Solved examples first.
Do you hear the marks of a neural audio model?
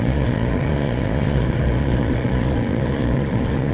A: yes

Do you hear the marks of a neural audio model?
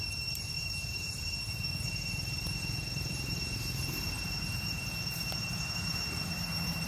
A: yes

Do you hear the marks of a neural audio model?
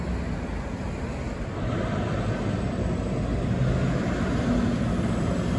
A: no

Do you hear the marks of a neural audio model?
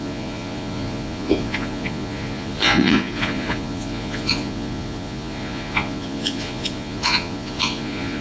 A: yes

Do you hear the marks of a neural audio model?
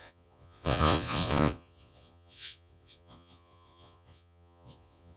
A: yes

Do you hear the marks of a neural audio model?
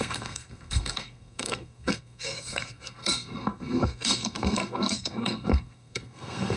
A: yes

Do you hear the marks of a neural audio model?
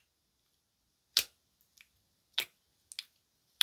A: no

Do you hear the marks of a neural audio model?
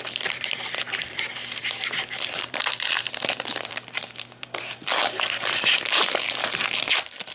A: yes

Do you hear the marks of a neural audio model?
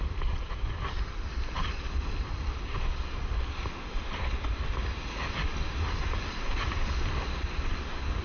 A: no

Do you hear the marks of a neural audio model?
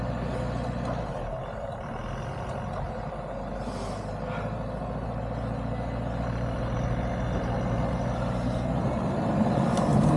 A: no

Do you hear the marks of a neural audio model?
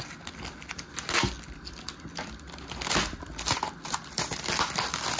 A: no